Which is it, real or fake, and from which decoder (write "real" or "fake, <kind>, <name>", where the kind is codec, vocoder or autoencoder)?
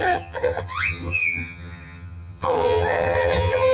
fake, vocoder, HiFi-GAN